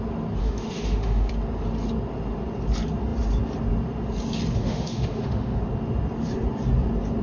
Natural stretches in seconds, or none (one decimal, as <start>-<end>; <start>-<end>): 0.0-0.4; 1.3-4.6; 5.6-7.2